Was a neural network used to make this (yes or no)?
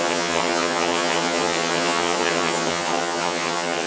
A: yes